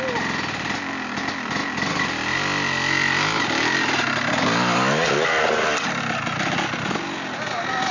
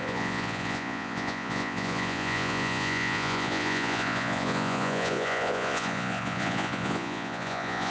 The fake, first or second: second